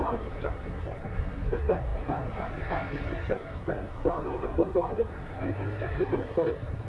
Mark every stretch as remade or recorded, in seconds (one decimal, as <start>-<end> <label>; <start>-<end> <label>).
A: 0.0-6.9 remade